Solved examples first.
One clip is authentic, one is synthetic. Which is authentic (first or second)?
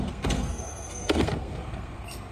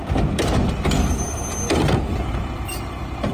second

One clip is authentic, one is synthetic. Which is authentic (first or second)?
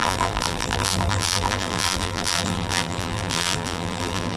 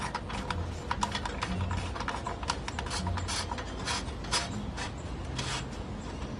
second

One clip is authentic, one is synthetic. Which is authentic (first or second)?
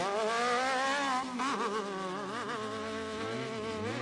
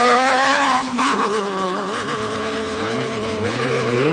first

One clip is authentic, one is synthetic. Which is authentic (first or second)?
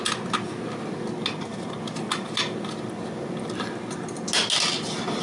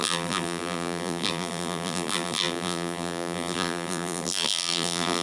first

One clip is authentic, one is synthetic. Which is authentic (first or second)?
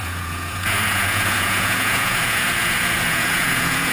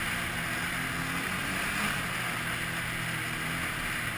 second